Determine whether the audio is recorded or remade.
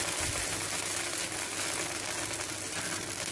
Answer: recorded